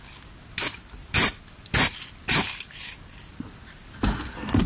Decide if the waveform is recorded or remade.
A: recorded